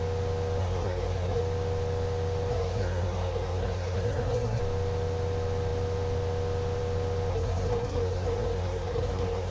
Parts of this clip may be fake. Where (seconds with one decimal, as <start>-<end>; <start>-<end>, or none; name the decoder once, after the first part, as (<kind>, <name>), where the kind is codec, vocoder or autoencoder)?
0.6-1.4 (codec, SNAC); 2.5-4.6; 7.3-9.5